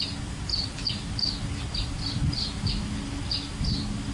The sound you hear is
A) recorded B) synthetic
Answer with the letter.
A